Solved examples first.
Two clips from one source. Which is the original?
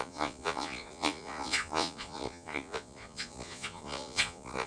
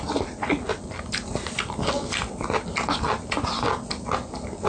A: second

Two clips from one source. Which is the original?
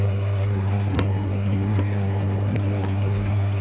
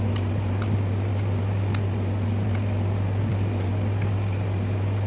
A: second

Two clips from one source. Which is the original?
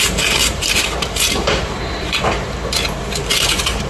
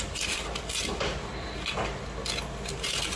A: second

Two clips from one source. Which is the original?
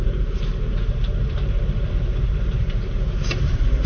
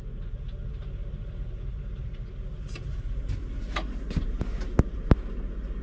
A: second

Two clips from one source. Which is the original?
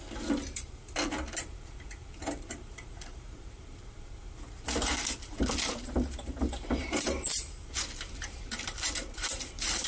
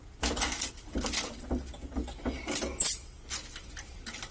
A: second